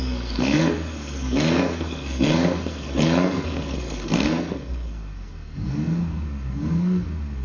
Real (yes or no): no